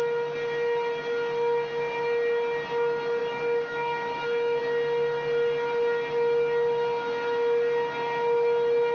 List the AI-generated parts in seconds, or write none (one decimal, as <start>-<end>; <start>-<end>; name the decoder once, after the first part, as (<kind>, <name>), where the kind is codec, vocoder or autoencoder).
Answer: 3.2-4.6 (autoencoder, DAC-VAE)